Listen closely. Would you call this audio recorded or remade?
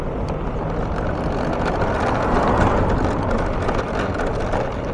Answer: recorded